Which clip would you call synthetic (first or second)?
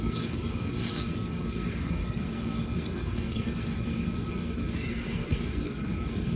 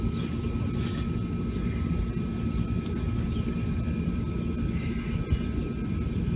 first